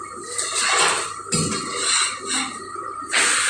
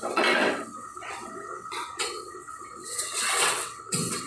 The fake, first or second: second